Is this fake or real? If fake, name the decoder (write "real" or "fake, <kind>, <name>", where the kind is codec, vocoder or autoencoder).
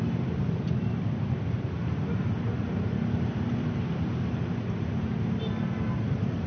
real